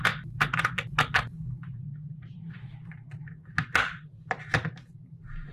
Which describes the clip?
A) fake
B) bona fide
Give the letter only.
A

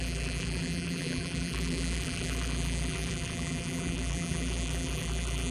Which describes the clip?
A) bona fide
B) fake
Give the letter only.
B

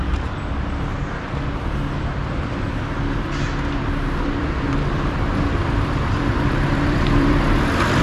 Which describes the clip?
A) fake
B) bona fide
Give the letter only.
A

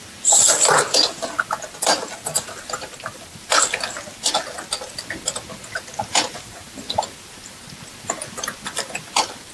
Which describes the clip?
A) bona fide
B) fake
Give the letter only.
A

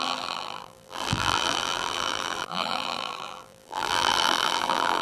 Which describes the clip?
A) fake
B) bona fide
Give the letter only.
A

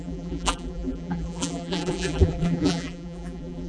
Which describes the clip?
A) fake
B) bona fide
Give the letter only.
A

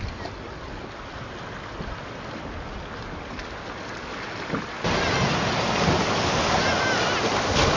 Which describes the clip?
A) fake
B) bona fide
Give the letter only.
B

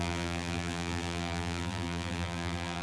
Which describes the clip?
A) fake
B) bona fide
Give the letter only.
A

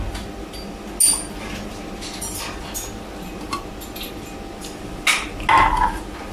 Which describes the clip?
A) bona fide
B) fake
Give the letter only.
A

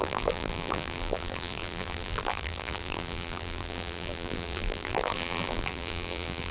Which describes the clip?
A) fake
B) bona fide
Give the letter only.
A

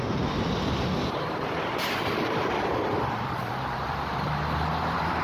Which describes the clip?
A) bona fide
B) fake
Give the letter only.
B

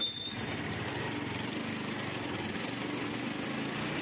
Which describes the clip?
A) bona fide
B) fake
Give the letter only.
A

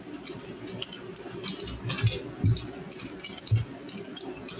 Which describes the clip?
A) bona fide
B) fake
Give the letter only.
A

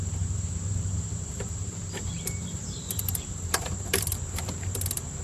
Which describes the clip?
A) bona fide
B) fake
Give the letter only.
B